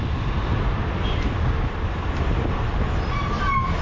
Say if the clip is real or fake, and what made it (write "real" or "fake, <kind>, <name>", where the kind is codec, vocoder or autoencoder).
real